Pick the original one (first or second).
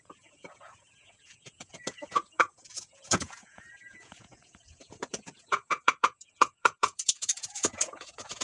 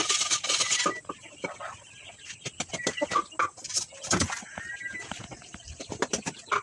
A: second